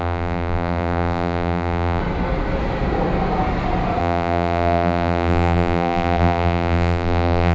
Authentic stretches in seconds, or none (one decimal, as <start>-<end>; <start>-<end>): 2.0-4.0